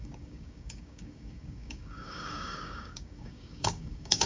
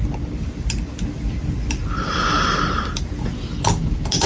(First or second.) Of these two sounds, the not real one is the first